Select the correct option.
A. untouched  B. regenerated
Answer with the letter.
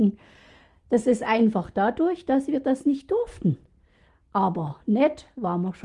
A